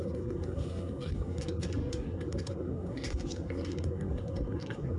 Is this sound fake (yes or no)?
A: yes